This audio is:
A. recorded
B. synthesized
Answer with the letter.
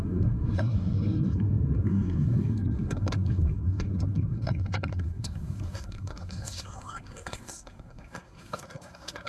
B